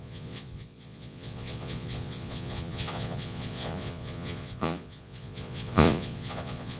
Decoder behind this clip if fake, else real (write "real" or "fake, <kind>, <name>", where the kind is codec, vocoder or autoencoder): fake, vocoder, Vocos